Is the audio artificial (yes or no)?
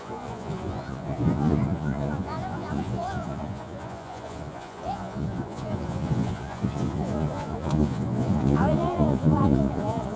yes